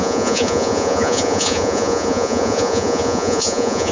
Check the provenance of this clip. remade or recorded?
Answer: remade